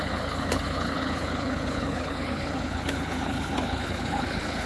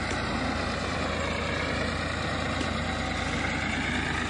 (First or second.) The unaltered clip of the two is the second